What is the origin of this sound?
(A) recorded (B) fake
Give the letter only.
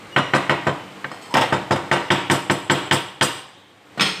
A